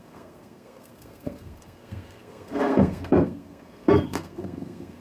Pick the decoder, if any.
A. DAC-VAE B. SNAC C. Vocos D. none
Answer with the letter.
B